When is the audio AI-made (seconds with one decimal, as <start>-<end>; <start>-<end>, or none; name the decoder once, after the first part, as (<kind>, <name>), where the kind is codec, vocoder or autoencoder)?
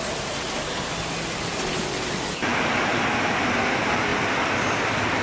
none